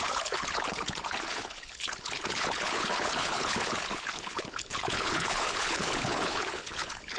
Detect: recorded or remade remade